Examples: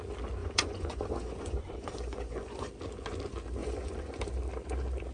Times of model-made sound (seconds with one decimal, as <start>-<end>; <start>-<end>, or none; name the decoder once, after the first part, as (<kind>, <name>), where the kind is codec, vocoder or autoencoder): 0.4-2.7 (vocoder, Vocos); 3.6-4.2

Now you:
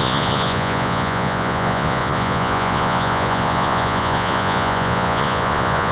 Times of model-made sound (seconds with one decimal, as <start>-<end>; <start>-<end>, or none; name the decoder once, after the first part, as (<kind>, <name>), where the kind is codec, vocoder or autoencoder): 0.0-5.9 (vocoder, Vocos)

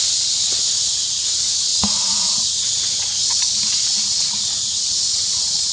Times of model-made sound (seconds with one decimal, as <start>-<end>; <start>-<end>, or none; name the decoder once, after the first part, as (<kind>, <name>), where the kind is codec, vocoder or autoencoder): 0.0-5.7 (vocoder, Vocos)

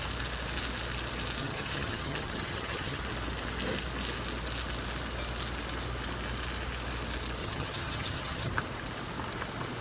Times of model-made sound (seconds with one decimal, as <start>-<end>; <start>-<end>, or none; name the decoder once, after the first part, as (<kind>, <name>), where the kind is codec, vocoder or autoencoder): 1.4-3.0 (vocoder, HiFi-GAN); 7.4-8.5

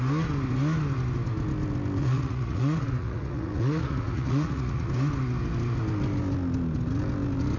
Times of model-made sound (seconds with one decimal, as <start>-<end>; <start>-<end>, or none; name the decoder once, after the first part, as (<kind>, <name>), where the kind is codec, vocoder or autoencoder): 2.0-4.9 (vocoder, Vocos)

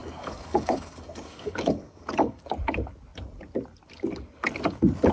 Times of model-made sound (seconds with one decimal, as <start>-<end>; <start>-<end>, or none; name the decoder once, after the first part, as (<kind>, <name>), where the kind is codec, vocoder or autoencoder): 0.0-2.4 (codec, DAC)

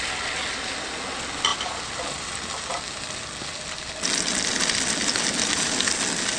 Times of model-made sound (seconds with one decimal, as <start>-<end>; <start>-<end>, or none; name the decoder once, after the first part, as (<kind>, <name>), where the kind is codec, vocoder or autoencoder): none